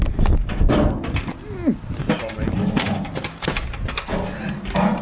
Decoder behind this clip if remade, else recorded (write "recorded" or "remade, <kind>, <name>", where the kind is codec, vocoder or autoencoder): recorded